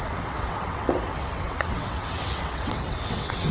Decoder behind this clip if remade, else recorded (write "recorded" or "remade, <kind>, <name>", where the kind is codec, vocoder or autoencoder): remade, vocoder, WaveNeXt